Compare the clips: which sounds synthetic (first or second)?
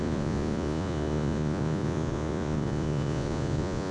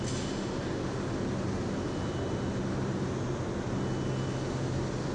first